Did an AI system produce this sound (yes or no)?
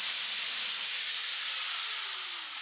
no